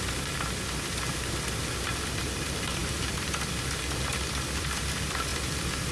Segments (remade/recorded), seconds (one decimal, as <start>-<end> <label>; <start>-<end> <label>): 0.0-5.9 recorded